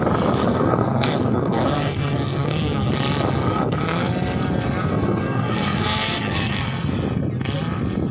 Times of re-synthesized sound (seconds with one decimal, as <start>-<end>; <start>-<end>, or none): 0.4-2.9; 3.4-4.1; 4.9-6.9